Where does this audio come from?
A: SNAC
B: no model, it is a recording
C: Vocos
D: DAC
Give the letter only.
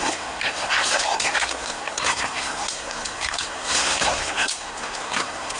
A